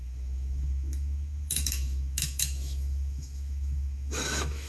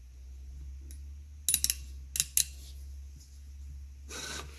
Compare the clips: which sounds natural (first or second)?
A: second